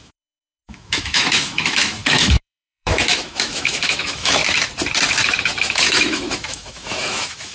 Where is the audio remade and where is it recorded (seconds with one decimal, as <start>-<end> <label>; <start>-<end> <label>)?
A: 0.0-4.4 remade; 4.4-5.6 recorded; 5.6-7.5 remade